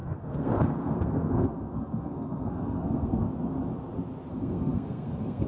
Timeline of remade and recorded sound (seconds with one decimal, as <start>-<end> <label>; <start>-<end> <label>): 0.0-3.2 remade; 3.2-4.3 recorded; 4.3-5.5 remade

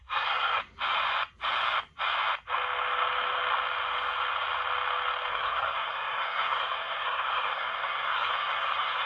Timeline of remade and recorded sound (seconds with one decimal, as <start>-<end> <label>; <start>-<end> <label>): 0.0-0.6 remade; 0.6-5.3 recorded; 5.3-9.1 remade

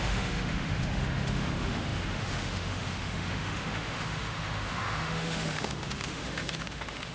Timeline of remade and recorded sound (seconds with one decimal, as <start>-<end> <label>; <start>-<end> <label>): 0.0-7.1 remade

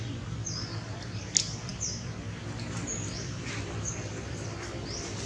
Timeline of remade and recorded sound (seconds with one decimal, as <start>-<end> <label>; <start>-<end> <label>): 0.0-5.3 recorded

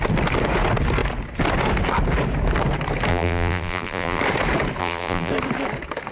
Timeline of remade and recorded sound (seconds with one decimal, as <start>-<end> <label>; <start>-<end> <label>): 0.0-3.1 recorded; 3.1-4.2 remade; 4.2-4.8 recorded; 4.8-5.3 remade; 5.3-6.1 recorded

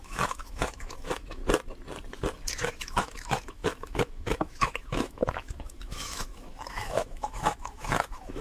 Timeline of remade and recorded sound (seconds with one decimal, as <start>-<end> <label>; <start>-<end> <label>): 0.0-1.4 remade; 1.4-2.5 recorded; 2.5-8.4 remade